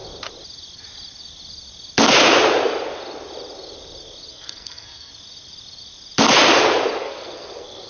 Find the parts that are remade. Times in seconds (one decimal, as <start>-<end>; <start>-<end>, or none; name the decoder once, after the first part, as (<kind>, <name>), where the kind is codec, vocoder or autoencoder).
4.3-5.1 (codec, SNAC); 7.0-7.9